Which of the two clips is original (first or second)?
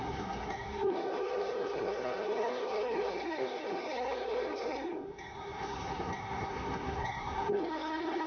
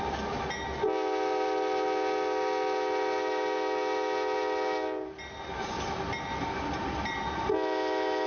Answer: second